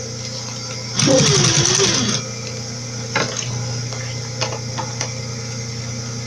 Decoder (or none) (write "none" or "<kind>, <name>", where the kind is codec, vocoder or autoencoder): none